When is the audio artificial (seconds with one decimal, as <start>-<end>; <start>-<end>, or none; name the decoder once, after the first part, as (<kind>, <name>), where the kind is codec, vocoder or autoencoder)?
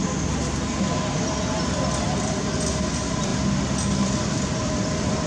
none